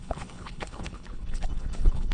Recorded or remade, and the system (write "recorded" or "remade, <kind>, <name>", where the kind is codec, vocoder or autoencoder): remade, codec, HILCodec